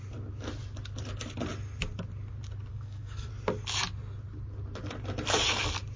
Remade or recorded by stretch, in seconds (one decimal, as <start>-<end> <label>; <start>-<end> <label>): 0.0-2.7 recorded; 2.7-3.3 remade; 3.3-6.0 recorded